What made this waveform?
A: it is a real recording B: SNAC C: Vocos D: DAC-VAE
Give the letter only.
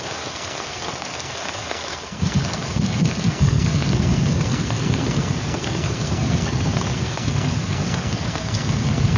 B